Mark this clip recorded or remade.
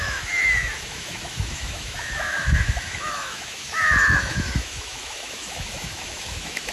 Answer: remade